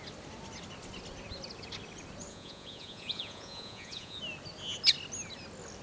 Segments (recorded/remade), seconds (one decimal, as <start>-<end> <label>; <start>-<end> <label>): 0.0-2.3 recorded; 2.3-4.2 remade; 4.2-5.8 recorded